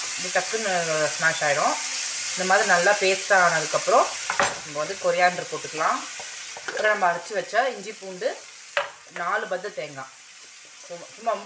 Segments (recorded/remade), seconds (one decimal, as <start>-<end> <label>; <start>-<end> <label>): 0.0-11.5 recorded